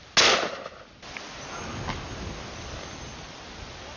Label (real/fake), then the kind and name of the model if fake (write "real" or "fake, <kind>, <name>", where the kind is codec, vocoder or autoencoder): real